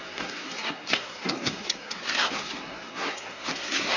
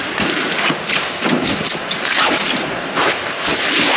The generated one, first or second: first